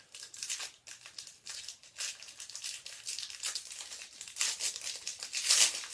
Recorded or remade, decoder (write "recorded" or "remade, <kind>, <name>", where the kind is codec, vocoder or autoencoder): recorded